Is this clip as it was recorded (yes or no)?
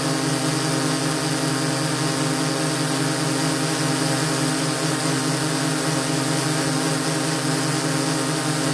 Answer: yes